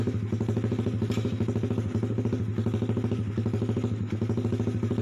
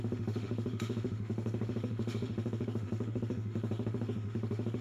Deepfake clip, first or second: second